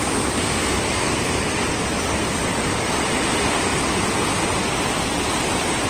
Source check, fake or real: real